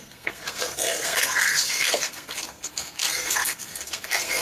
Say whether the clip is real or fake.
fake